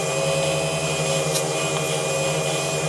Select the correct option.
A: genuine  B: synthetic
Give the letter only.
A